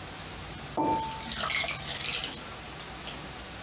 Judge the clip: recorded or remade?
recorded